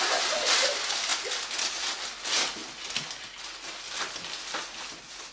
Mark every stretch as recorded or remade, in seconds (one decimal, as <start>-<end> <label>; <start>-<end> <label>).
0.0-5.3 recorded